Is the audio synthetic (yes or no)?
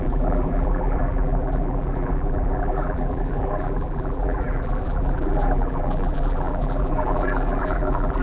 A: yes